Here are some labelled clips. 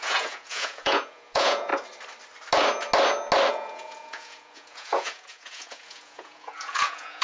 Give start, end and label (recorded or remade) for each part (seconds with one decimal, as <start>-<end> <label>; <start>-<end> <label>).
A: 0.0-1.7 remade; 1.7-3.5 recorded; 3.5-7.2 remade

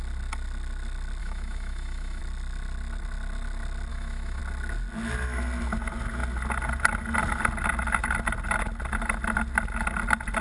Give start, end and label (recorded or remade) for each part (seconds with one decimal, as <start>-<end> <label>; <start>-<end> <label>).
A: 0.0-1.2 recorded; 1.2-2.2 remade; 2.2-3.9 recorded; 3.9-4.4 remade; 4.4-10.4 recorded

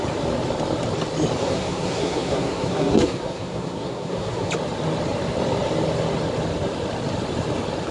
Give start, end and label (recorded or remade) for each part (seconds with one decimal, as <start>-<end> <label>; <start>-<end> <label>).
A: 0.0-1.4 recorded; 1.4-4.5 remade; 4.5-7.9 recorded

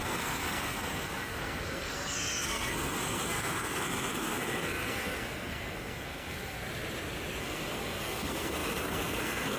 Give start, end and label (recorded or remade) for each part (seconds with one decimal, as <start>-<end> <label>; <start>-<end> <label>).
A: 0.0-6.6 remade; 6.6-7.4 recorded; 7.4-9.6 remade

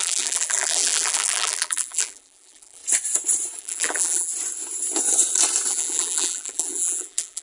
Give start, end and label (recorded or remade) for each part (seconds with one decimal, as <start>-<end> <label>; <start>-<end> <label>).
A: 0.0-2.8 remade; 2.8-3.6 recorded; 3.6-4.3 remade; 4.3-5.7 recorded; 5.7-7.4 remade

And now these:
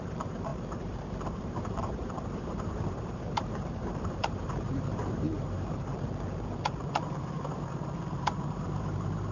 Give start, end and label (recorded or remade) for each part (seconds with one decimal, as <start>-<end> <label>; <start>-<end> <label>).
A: 0.0-5.9 remade; 5.9-7.1 recorded; 7.1-9.3 remade

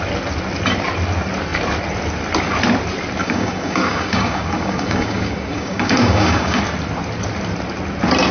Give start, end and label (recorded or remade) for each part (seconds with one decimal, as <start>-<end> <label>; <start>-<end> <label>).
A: 0.0-3.2 recorded; 3.2-6.6 remade; 6.6-8.3 recorded